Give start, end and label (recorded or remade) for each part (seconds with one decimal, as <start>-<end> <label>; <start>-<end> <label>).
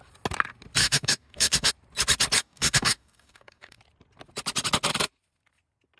0.0-0.8 recorded; 0.8-1.7 remade; 1.7-2.4 recorded; 2.4-3.8 remade; 3.8-6.0 recorded